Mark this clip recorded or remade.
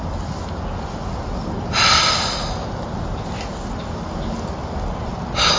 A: recorded